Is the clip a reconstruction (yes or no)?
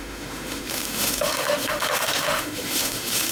yes